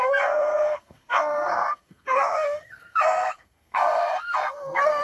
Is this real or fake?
fake